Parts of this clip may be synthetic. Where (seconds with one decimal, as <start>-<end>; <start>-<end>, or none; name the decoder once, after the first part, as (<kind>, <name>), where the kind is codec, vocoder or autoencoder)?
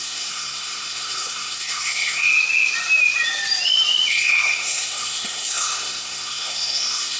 0.0-2.3 (codec, SNAC); 4.1-7.2